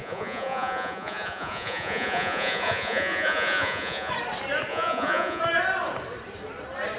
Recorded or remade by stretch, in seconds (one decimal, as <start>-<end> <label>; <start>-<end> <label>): 0.0-4.1 remade; 4.1-4.7 recorded; 4.7-5.4 remade; 5.4-7.0 recorded